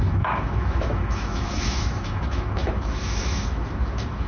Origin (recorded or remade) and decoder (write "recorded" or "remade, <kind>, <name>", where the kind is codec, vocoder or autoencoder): remade, autoencoder, DAC-VAE